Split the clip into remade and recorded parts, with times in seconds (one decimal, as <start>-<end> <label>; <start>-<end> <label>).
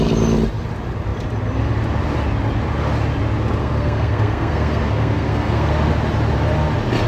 0.0-3.6 recorded; 3.6-5.7 remade; 5.7-7.1 recorded